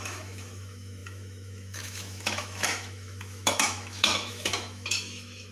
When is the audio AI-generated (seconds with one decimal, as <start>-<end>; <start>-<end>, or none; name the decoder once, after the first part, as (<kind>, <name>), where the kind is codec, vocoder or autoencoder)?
0.0-5.5 (autoencoder, DAC-VAE)